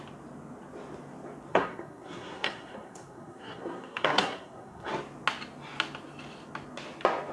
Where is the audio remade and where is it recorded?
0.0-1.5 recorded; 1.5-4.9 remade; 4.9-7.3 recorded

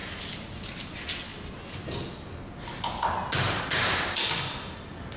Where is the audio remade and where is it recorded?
0.0-5.2 recorded

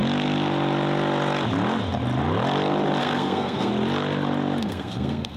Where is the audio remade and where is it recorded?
0.0-3.0 recorded; 3.0-3.7 remade; 3.7-4.6 recorded; 4.6-5.4 remade

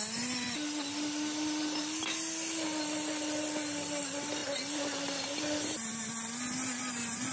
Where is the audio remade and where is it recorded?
0.0-7.3 recorded

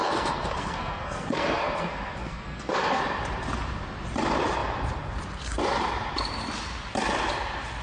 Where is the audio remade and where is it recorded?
0.0-3.0 remade; 3.0-7.8 recorded

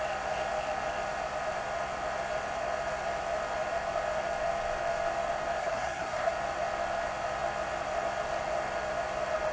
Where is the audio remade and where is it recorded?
0.0-5.6 recorded; 5.6-6.3 remade; 6.3-9.5 recorded